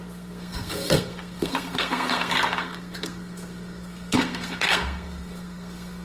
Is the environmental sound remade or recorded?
remade